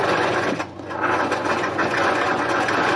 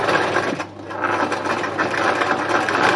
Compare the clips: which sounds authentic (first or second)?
second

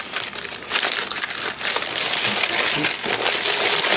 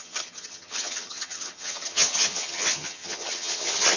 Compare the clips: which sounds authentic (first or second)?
first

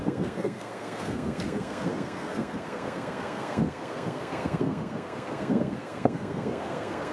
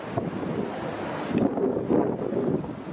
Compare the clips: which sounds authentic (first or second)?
second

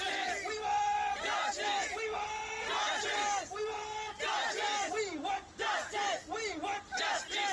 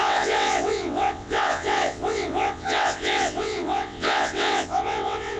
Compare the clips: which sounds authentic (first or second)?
first